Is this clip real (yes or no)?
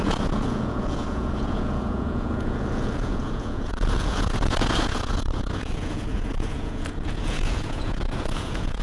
no